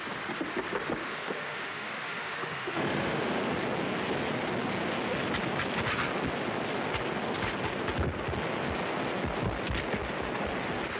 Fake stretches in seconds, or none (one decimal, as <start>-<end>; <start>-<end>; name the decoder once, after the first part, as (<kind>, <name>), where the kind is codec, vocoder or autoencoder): 1.0-3.4 (autoencoder, DAC-VAE)